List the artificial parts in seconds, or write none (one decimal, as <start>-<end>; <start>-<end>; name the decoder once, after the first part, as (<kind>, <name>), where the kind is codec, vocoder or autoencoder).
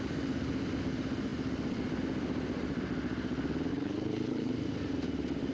3.7-4.5 (codec, HILCodec)